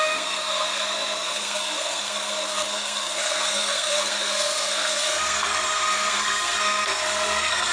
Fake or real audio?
fake